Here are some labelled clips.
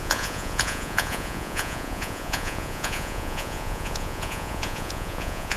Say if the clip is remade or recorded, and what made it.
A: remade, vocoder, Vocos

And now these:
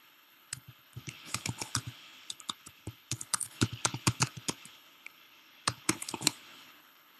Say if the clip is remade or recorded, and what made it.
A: remade, codec, HILCodec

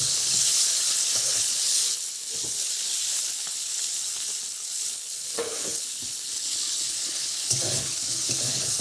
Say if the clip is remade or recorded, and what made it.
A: remade, codec, HILCodec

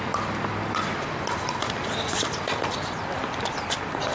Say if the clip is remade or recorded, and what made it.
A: remade, vocoder, BigVGAN v2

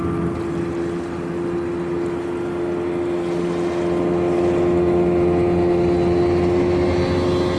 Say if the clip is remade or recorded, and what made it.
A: recorded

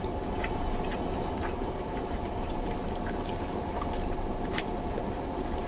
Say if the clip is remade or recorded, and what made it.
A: remade, vocoder, BigVGAN v2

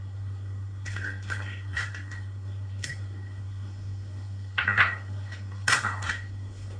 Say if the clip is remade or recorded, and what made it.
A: remade, codec, SNAC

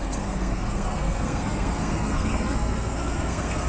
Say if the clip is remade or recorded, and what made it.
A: remade, codec, SNAC